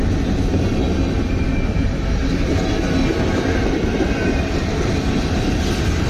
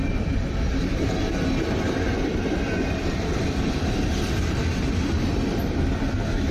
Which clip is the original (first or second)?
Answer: first